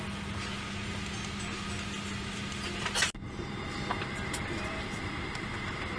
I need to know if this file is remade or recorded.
recorded